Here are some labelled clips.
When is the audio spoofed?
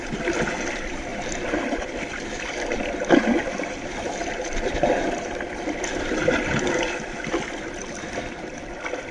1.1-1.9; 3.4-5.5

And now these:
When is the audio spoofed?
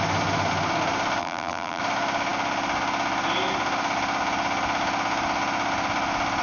1.2-1.8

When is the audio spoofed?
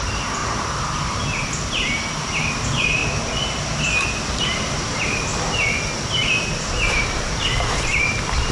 0.0-3.0; 4.3-5.3; 6.6-8.5